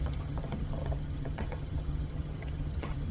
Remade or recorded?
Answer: remade